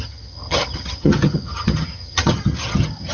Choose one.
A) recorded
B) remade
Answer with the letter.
B